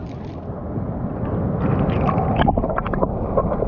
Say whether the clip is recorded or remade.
recorded